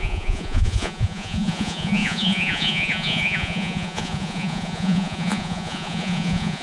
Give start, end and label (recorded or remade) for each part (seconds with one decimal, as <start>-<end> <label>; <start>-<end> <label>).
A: 0.0-6.6 remade